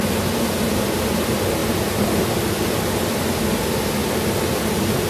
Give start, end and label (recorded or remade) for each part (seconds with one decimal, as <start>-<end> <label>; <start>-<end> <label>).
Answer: 0.0-5.1 recorded